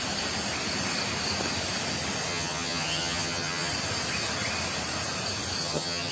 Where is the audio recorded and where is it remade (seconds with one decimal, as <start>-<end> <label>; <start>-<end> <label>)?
0.0-2.3 recorded; 2.3-3.7 remade; 3.7-5.6 recorded; 5.6-6.1 remade